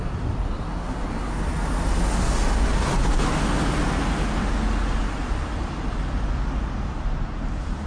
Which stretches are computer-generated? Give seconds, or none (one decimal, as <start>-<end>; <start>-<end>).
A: none